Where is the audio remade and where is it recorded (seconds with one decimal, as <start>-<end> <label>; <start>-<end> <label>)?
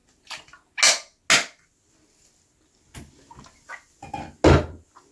0.0-5.1 recorded